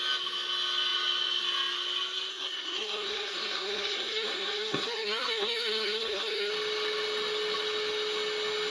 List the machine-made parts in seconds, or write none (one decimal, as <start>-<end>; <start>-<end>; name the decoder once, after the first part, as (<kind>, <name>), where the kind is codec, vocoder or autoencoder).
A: 2.3-6.5 (codec, SNAC)